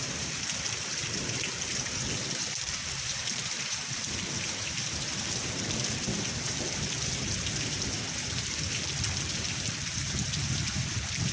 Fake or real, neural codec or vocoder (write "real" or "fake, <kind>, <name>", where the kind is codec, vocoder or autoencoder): fake, vocoder, BigVGAN v2